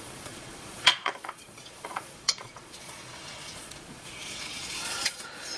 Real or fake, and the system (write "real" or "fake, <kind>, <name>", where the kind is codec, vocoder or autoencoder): fake, vocoder, Vocos